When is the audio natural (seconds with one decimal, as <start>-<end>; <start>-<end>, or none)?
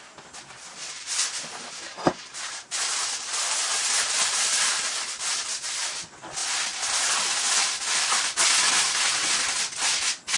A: 0.0-0.8; 4.6-10.4